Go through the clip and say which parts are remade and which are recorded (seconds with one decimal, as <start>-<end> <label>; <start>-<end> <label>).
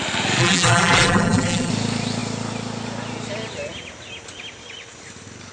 0.0-0.4 recorded; 0.4-1.7 remade; 1.7-5.5 recorded